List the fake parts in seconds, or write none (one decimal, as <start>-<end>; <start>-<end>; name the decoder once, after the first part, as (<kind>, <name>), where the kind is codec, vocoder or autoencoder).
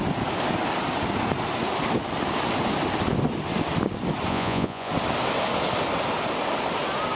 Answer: 4.3-4.9 (vocoder, Vocos)